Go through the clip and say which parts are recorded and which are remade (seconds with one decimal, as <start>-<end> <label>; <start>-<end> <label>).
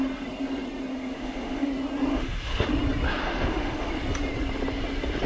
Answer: 0.0-0.9 recorded; 0.9-1.7 remade; 1.7-2.1 recorded; 2.1-2.7 remade; 2.7-3.2 recorded; 3.2-3.9 remade; 3.9-5.3 recorded